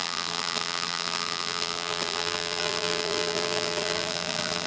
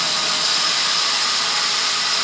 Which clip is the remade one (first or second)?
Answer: first